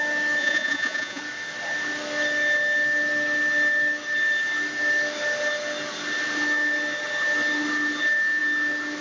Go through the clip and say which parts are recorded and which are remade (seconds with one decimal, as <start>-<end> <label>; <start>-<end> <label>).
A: 0.0-0.4 recorded; 0.4-1.2 remade; 1.2-9.0 recorded